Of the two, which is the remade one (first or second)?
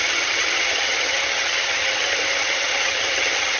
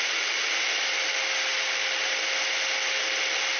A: first